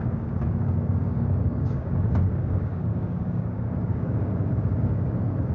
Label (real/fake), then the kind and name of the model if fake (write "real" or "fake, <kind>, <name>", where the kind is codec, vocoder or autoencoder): fake, codec, DAC